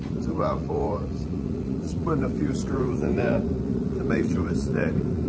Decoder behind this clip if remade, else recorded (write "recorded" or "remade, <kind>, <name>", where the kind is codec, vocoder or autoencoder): remade, vocoder, Vocos